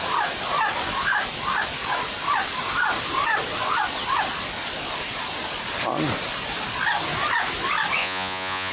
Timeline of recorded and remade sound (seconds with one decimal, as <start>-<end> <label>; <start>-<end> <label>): 0.0-8.0 recorded; 8.0-8.7 remade